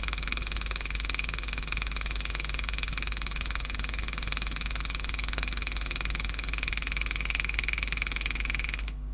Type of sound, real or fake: fake